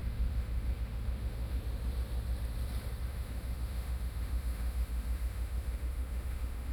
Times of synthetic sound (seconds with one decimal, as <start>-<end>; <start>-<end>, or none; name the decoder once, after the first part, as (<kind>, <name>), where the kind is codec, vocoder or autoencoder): 0.0-1.6 (autoencoder, DAC-VAE); 3.1-6.7